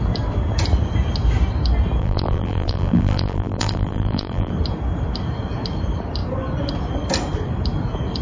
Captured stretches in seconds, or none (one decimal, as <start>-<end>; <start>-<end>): 0.0-2.0; 4.5-8.2